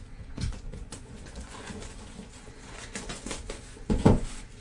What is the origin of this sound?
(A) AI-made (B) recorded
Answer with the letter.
A